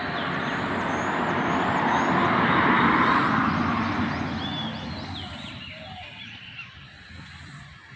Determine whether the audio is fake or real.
real